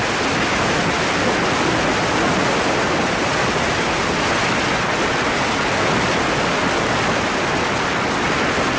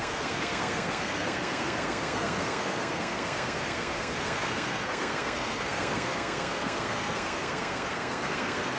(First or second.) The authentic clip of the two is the first